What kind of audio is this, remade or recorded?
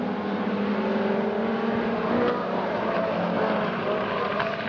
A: recorded